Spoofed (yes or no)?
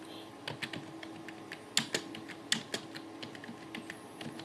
no